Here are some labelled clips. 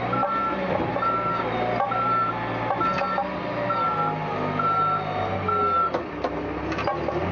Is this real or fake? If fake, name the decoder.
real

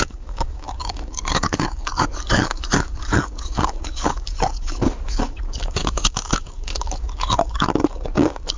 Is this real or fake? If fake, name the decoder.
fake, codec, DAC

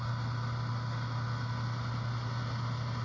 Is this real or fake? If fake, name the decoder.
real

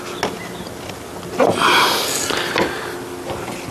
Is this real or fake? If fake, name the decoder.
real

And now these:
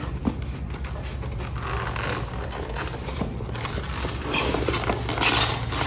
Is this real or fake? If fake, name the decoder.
real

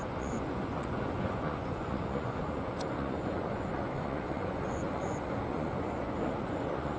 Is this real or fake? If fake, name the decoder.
fake, vocoder, Vocos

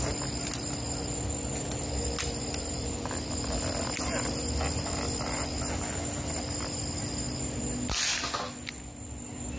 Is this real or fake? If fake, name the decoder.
real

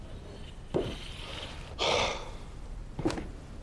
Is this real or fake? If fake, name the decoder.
real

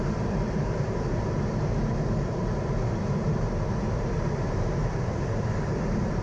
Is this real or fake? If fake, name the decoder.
fake, vocoder, BigVGAN v2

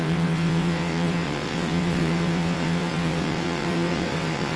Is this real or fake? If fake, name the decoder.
fake, vocoder, WaveNeXt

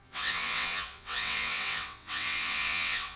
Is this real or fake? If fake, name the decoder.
fake, vocoder, WaveNeXt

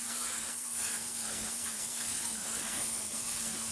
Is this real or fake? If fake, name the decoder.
fake, codec, SNAC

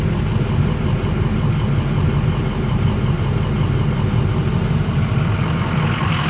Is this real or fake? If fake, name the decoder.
real